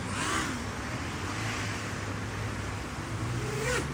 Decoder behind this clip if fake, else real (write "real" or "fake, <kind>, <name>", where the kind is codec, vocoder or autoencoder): real